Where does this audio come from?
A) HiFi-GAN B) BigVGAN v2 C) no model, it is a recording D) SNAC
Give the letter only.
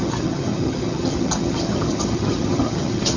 A